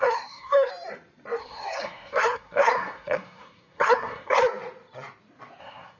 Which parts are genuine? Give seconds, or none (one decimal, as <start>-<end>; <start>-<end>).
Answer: 0.7-1.4; 4.4-5.6